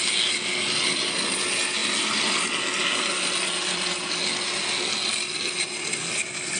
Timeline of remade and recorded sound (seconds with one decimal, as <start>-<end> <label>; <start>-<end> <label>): 0.0-6.6 recorded